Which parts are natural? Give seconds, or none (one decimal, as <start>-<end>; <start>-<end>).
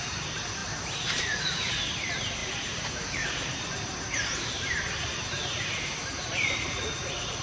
0.0-0.6; 1.7-2.4; 6.8-7.4